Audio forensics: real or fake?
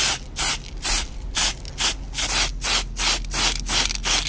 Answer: real